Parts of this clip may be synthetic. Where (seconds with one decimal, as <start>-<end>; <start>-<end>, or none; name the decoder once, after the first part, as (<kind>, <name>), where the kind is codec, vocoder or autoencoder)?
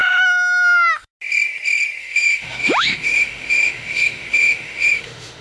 0.0-1.1 (autoencoder, DAC-VAE); 2.0-5.4